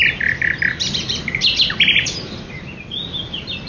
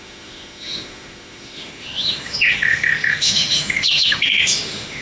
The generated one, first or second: second